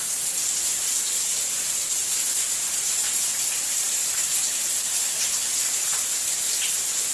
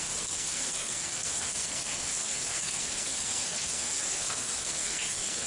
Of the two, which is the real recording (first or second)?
first